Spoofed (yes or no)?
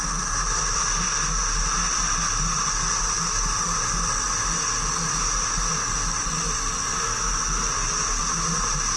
no